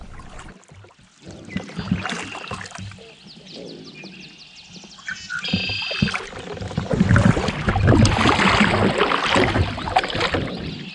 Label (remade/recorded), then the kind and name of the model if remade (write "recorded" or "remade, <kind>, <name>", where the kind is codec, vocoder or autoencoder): recorded